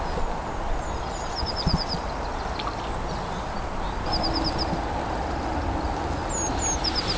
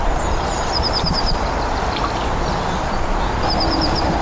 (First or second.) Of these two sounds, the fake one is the second